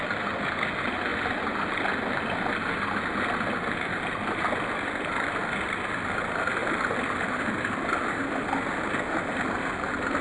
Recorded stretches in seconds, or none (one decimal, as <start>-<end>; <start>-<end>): 0.0-6.6; 7.7-10.2